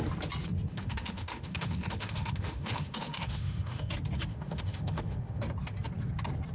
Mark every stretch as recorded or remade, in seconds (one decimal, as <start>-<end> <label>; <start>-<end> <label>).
0.0-0.7 recorded; 0.7-3.9 remade; 3.9-4.3 recorded; 4.3-5.4 remade; 5.4-6.5 recorded